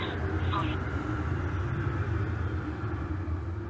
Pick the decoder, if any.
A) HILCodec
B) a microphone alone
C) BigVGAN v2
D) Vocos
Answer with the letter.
C